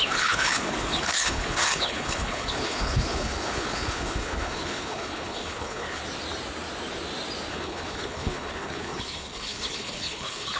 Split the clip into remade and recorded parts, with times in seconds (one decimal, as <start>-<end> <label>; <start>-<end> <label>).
0.0-6.0 remade; 6.0-7.5 recorded; 7.5-10.6 remade